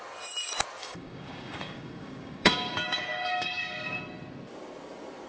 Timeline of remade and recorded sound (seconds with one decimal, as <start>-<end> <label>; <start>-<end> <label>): 0.0-0.8 recorded; 0.8-4.0 remade; 4.0-5.3 recorded